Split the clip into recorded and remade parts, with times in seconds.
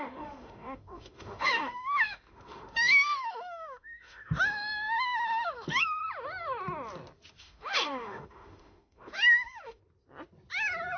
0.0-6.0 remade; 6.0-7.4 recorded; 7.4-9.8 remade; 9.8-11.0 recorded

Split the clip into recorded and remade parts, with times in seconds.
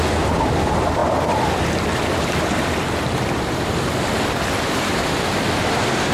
0.0-6.1 remade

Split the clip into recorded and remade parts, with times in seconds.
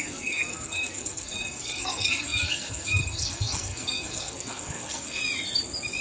0.0-5.2 remade; 5.2-6.0 recorded